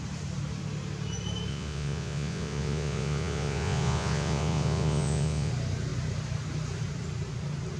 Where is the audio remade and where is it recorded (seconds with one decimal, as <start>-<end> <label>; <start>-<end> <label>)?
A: 0.0-1.5 recorded; 1.5-5.5 remade; 5.5-7.8 recorded